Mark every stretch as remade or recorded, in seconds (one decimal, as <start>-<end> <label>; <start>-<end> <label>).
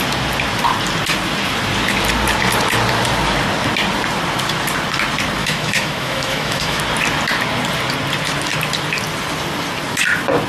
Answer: 0.0-5.4 recorded; 5.4-6.8 remade; 6.8-10.5 recorded